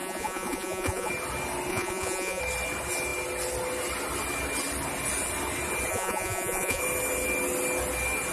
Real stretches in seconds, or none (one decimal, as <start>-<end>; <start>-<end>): 1.1-1.7; 2.4-5.9; 6.8-8.3